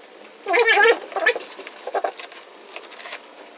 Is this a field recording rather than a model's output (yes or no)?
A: yes